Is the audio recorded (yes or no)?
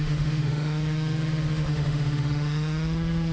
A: no